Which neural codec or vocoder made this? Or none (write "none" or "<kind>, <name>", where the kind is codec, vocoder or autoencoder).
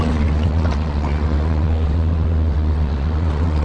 vocoder, WaveNeXt